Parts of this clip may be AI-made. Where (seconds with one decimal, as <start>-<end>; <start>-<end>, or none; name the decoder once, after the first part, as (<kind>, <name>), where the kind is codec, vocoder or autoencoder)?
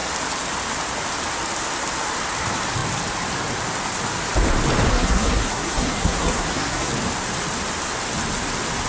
4.9-6.9 (codec, SNAC)